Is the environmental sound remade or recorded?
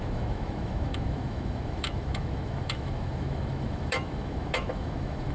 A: remade